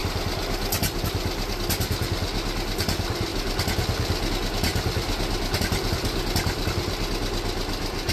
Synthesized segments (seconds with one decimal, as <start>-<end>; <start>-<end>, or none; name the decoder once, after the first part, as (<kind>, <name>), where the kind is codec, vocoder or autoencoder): none